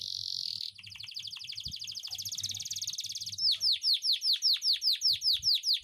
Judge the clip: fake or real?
real